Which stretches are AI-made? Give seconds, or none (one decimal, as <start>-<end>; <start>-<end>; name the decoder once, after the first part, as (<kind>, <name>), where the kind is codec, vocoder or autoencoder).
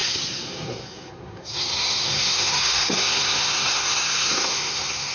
0.0-5.1 (codec, SNAC)